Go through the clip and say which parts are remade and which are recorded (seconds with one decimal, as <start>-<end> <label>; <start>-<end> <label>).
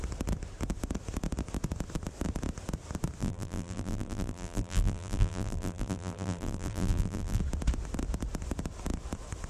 0.0-3.2 recorded; 3.2-7.4 remade; 7.4-9.5 recorded